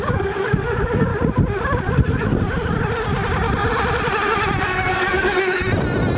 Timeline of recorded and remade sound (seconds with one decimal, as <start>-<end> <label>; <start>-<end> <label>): 0.0-1.1 remade; 1.1-1.8 recorded; 1.8-2.3 remade; 2.3-4.6 recorded; 4.6-5.6 remade; 5.6-6.2 recorded